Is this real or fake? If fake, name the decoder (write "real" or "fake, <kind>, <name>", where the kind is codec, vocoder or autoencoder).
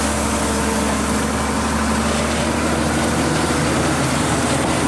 real